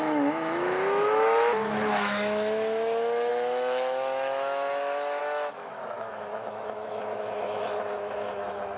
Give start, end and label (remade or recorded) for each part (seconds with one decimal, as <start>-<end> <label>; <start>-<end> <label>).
0.0-8.8 remade